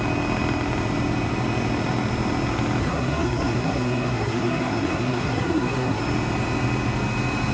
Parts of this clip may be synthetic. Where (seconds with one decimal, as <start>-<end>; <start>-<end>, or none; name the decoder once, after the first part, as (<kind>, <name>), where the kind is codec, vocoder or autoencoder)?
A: 2.8-6.0 (codec, SNAC)